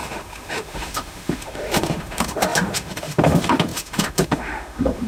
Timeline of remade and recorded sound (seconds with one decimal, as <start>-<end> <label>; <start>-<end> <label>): 0.0-5.1 remade